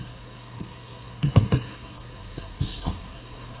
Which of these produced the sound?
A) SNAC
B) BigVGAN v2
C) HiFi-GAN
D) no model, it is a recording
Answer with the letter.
A